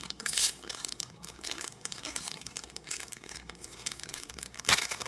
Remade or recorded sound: remade